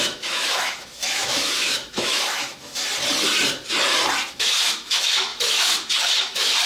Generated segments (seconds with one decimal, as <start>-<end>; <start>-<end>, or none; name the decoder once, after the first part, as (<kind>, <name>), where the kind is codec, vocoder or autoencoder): 0.0-2.7 (autoencoder, DAC-VAE); 4.3-6.7